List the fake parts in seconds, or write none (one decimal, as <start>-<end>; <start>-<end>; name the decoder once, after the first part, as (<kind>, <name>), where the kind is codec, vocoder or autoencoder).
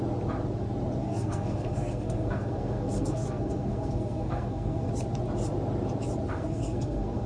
1.0-4.9 (codec, SNAC); 6.3-7.3